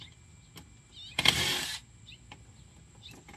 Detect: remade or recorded recorded